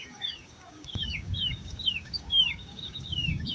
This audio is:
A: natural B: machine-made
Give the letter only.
B